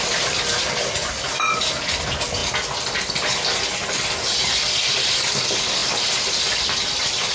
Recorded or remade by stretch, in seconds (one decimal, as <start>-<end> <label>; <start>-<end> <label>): 0.0-2.4 remade; 2.4-4.8 recorded; 4.8-7.3 remade